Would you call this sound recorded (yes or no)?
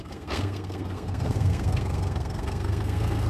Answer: no